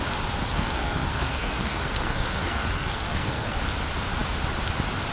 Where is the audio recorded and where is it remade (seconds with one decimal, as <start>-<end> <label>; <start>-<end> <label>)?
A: 0.0-0.5 recorded; 0.5-3.6 remade; 3.6-5.1 recorded